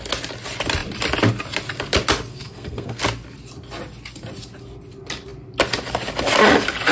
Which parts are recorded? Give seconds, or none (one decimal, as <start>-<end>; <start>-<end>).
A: 0.0-2.3; 3.0-6.9